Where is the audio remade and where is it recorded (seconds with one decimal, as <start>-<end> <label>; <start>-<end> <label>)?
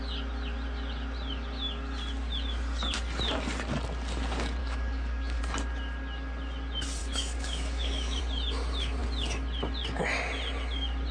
0.0-4.6 recorded; 4.6-5.4 remade; 5.4-7.0 recorded; 7.0-8.2 remade; 8.2-11.1 recorded